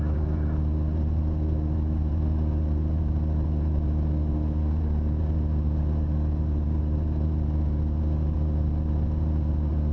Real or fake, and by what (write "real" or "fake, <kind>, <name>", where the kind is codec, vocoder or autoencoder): real